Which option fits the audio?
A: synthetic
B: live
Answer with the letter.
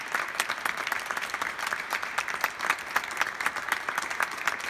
B